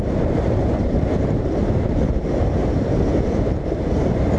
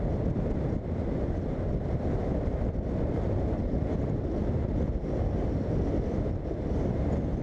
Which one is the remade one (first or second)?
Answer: first